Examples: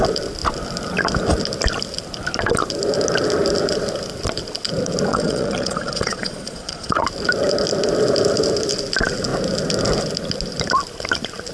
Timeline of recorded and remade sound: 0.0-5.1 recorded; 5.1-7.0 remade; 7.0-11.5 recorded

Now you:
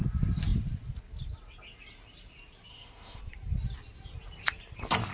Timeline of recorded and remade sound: 0.0-2.7 recorded; 2.7-3.2 remade; 3.2-5.1 recorded